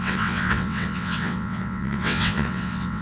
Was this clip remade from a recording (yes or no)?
yes